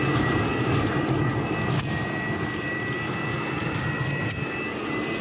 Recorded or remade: recorded